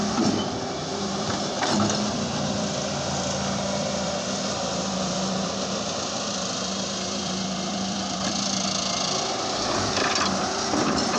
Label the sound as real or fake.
fake